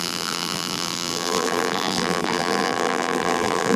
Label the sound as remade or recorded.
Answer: remade